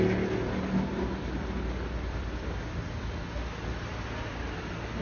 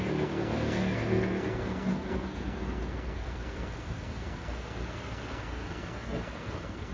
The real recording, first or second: first